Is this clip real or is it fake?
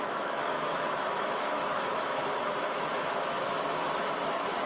fake